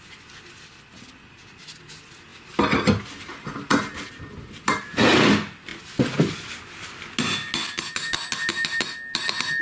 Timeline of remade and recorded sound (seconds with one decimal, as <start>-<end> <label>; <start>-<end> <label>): 0.0-9.6 recorded